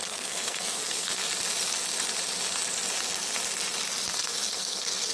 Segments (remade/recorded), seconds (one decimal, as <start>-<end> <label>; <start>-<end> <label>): 0.0-1.2 remade; 1.2-4.1 recorded; 4.1-5.1 remade